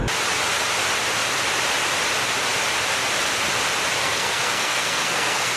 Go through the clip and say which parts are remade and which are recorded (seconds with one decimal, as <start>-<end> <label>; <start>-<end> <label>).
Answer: 0.0-4.0 recorded; 4.0-5.6 remade